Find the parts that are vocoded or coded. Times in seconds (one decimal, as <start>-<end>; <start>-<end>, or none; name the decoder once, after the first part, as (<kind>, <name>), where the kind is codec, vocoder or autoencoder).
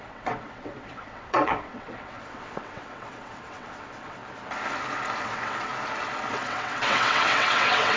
0.0-4.2 (vocoder, WaveNeXt); 5.2-5.7; 6.3-8.0